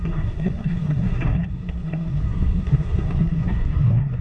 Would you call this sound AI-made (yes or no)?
yes